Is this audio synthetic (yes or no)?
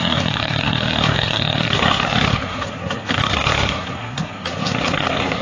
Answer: yes